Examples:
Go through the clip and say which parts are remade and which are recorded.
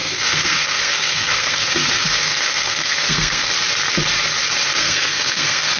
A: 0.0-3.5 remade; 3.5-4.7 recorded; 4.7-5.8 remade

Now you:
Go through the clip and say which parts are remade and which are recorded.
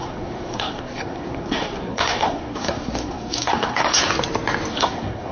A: 0.0-4.1 remade; 4.1-4.7 recorded; 4.7-5.3 remade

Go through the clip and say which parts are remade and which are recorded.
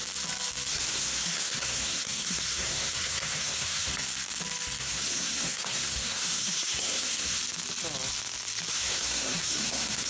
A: 0.0-0.7 recorded; 0.7-3.9 remade; 3.9-4.8 recorded; 4.8-7.4 remade; 7.4-8.7 recorded; 8.7-10.1 remade